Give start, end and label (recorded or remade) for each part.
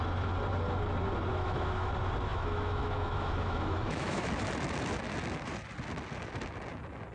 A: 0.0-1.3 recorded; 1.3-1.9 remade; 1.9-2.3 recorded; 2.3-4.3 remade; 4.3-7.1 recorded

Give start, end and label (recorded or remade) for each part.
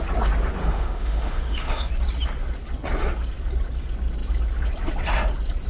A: 0.0-0.6 recorded; 0.6-1.9 remade; 1.9-5.7 recorded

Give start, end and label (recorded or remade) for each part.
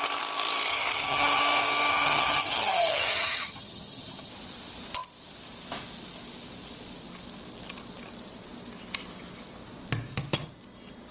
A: 0.0-0.7 recorded; 0.7-1.4 remade; 1.4-1.9 recorded; 1.9-4.3 remade; 4.3-11.1 recorded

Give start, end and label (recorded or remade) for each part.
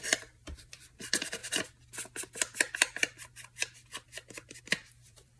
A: 0.0-1.4 remade; 1.4-4.6 recorded; 4.6-5.4 remade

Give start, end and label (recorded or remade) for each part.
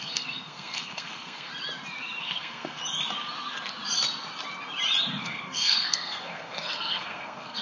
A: 0.0-1.5 remade; 1.5-2.2 recorded; 2.2-2.8 remade; 2.8-5.2 recorded; 5.2-7.6 remade